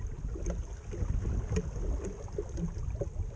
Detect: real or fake real